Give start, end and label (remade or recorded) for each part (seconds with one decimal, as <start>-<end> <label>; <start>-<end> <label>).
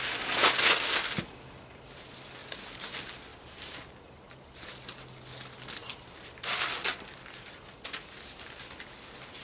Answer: 0.0-3.3 recorded; 3.3-4.7 remade; 4.7-5.8 recorded; 5.8-6.5 remade; 6.5-9.4 recorded